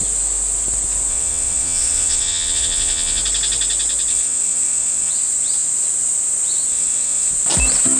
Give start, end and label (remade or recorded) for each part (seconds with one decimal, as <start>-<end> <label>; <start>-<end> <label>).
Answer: 0.0-1.1 recorded; 1.1-3.2 remade; 3.2-4.1 recorded; 4.1-5.1 remade; 5.1-6.7 recorded; 6.7-7.3 remade; 7.3-8.0 recorded